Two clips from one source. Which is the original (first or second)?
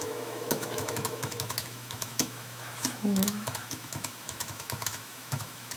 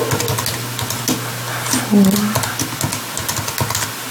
second